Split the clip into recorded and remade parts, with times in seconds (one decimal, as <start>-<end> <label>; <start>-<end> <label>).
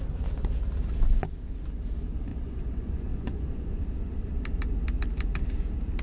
0.0-2.3 recorded; 2.3-3.8 remade; 3.8-6.0 recorded